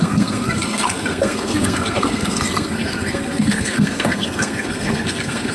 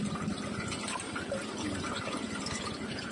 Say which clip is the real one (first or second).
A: second